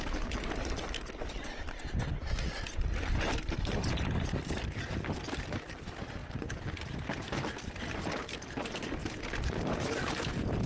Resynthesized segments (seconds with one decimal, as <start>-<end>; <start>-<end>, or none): 0.0-9.0